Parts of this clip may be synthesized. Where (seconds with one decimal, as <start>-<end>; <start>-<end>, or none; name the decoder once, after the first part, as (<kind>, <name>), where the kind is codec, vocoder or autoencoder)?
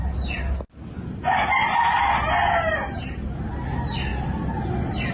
none